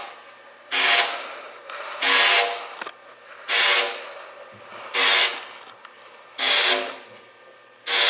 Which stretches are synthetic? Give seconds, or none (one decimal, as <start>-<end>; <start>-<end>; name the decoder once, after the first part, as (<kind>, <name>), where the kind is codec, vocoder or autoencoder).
none